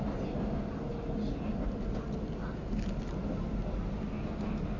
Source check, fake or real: real